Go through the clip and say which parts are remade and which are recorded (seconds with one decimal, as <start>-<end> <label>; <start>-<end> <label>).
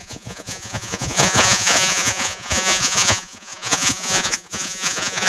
0.0-5.3 remade